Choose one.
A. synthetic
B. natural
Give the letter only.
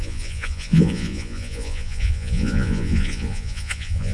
A